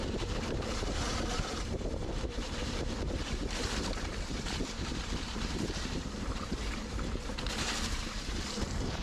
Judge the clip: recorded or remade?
remade